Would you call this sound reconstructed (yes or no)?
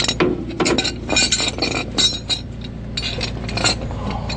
no